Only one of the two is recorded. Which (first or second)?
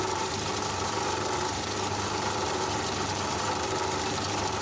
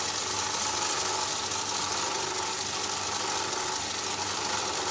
second